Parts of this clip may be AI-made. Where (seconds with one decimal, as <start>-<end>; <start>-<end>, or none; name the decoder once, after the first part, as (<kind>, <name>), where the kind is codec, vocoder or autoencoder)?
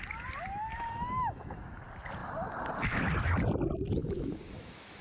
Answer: 0.7-1.8 (autoencoder, DAC-VAE); 4.0-5.0